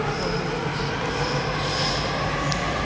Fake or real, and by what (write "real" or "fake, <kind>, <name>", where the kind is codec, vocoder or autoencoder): real